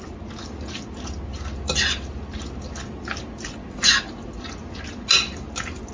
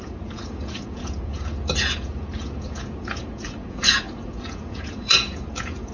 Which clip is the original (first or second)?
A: first